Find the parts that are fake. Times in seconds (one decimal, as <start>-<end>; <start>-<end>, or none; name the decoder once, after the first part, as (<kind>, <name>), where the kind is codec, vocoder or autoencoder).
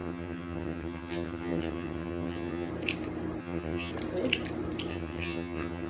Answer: 0.0-2.7 (vocoder, HiFi-GAN); 3.4-3.9; 4.9-5.9